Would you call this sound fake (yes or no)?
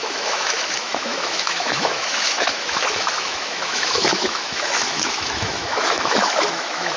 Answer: yes